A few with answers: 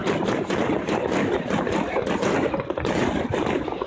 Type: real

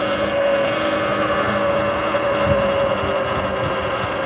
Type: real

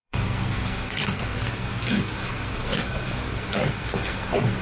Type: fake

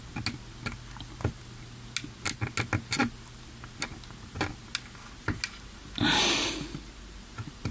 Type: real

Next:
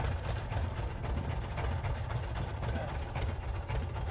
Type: real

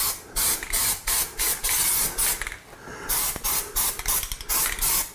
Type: real